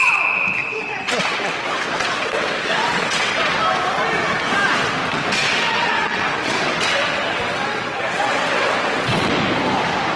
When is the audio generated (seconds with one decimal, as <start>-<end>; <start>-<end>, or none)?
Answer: 0.6-3.6; 5.1-9.3